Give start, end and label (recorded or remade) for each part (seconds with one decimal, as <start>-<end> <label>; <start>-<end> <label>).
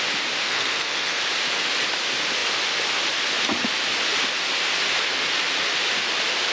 0.0-0.4 recorded; 0.4-1.2 remade; 1.2-6.5 recorded